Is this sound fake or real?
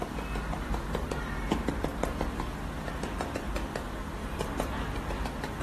real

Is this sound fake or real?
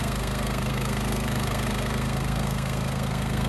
fake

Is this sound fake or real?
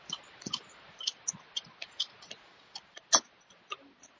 real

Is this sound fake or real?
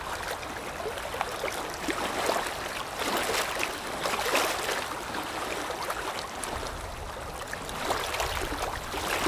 real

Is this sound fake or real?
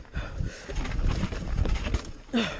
real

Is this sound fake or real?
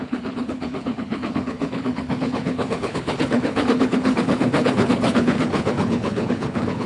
fake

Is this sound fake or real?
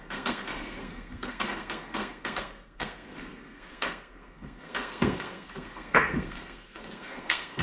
fake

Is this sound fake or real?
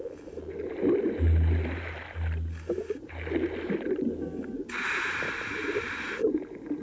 real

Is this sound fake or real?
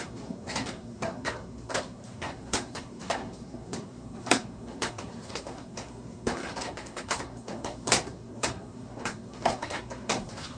fake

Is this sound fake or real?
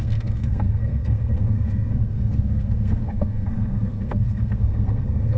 fake